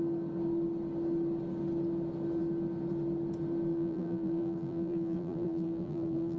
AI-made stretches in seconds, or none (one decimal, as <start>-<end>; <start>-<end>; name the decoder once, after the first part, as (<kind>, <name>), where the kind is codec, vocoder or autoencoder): 3.7-6.4 (vocoder, BigVGAN v2)